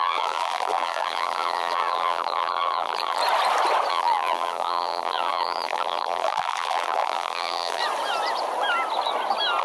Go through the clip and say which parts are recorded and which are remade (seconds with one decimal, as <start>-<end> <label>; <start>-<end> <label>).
0.0-3.2 remade; 3.2-3.9 recorded; 3.9-7.8 remade; 7.8-9.6 recorded